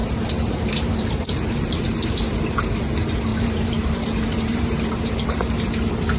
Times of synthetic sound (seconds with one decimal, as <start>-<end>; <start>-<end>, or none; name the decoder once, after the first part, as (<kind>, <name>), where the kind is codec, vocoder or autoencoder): 0.0-2.4 (vocoder, BigVGAN v2); 3.3-5.1